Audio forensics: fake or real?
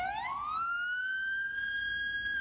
real